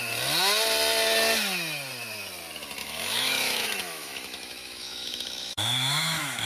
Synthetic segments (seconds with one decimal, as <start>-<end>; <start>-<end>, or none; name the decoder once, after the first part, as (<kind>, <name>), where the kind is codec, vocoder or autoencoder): 2.8-6.5 (autoencoder, DAC-VAE)